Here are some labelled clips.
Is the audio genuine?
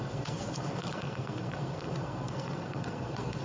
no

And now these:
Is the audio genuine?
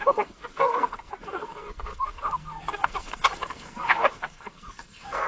no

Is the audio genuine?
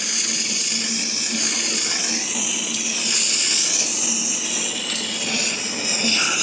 yes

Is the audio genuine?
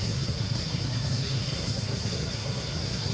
no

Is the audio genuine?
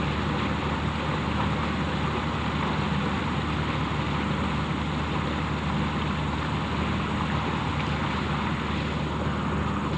yes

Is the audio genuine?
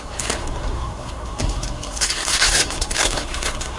no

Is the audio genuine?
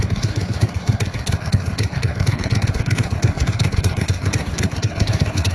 no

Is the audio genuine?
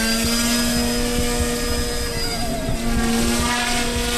yes